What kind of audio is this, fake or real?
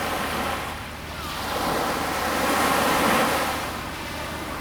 real